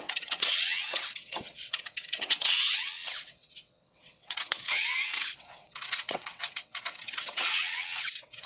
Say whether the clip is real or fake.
fake